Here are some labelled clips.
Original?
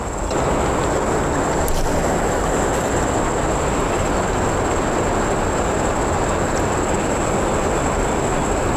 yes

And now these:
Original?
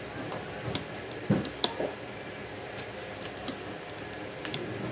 yes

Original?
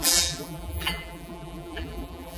no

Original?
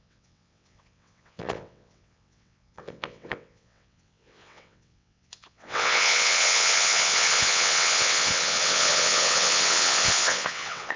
no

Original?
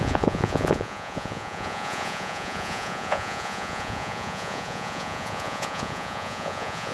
no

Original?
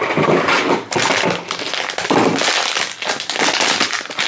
yes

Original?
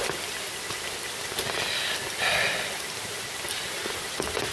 yes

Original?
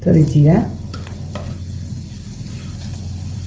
yes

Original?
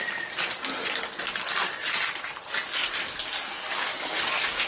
yes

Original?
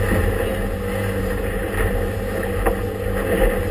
yes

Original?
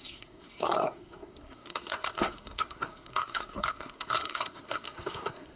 no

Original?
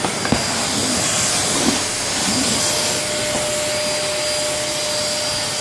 yes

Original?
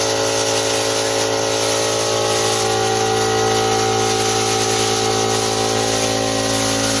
yes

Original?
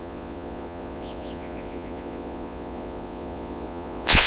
no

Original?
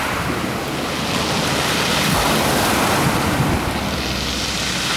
yes